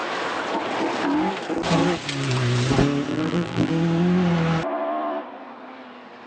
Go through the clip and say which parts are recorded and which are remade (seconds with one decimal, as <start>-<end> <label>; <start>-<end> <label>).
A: 0.0-3.1 recorded; 3.1-3.7 remade; 3.7-6.3 recorded